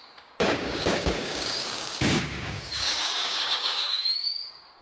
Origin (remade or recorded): remade